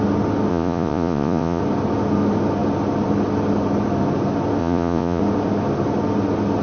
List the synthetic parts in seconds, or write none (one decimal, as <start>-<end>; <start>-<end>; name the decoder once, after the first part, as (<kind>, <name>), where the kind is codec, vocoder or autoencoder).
0.5-1.6 (vocoder, Vocos); 4.6-5.2